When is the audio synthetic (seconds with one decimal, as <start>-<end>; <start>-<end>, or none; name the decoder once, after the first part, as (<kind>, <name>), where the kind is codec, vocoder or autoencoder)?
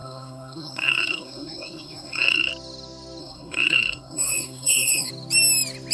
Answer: 0.0-2.5 (codec, SNAC); 3.2-5.1